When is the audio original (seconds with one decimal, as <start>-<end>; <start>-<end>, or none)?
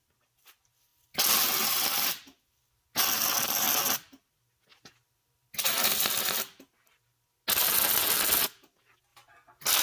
0.0-9.8